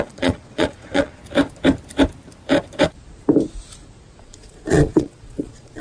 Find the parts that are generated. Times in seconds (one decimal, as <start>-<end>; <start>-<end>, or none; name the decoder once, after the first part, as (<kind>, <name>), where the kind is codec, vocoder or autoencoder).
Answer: 0.0-1.2 (vocoder, Vocos); 4.2-5.8